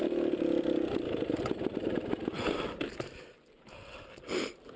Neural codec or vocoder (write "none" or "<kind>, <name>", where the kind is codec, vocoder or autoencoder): none